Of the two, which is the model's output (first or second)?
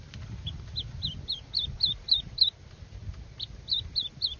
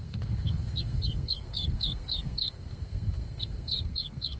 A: second